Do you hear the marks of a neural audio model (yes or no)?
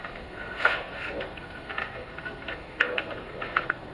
yes